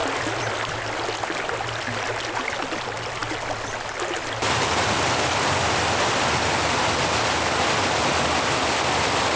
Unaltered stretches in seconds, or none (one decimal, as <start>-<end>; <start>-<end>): 0.0-9.4